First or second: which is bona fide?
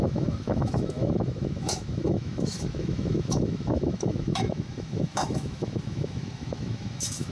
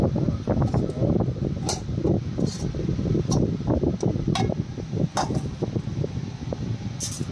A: second